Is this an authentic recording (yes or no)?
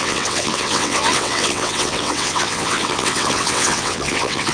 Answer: no